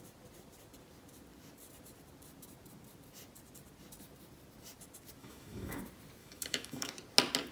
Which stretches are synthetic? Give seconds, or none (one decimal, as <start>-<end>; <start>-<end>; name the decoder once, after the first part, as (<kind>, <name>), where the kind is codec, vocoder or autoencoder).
5.2-5.8 (autoencoder, DAC-VAE); 6.2-6.9